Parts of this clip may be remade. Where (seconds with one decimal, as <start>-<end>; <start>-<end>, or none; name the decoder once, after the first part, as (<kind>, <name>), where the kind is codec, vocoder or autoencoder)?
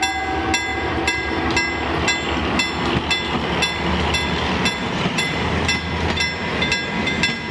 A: 0.7-1.4 (vocoder, BigVGAN v2); 4.8-5.4